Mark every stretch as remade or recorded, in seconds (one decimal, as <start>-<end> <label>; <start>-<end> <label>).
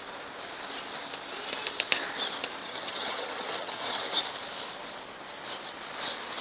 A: 0.0-2.6 recorded; 2.6-4.2 remade; 4.2-6.4 recorded